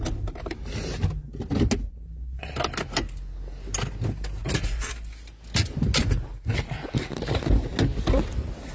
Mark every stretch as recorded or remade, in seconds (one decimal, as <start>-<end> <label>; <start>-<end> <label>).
0.0-8.7 recorded